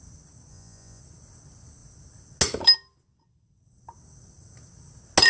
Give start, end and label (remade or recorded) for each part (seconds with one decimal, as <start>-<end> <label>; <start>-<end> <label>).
0.0-0.5 recorded; 0.5-1.0 remade; 1.0-5.3 recorded